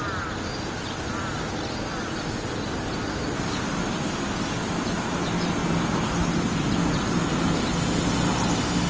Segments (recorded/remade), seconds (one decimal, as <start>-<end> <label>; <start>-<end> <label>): 0.0-8.9 recorded